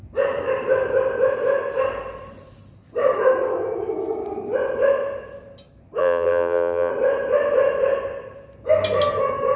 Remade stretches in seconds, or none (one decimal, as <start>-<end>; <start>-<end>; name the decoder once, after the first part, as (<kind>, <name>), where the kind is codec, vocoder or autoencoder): 6.0-6.9 (vocoder, BigVGAN v2)